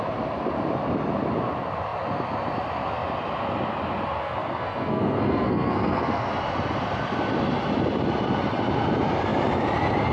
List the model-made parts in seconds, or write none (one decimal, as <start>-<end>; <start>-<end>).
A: 4.2-6.3